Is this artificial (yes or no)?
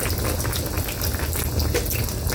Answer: no